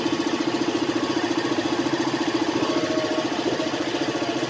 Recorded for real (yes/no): yes